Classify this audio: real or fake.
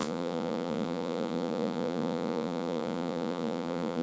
fake